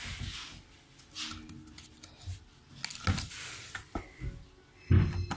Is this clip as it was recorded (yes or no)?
yes